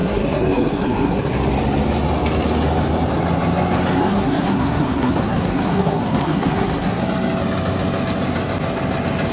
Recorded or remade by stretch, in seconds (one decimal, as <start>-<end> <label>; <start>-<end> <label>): 0.0-1.3 remade; 1.3-4.0 recorded; 4.0-7.0 remade; 7.0-9.3 recorded